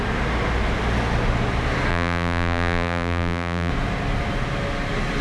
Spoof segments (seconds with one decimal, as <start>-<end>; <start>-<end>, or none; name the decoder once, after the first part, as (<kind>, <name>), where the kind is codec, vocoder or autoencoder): 1.9-3.7 (vocoder, BigVGAN v2)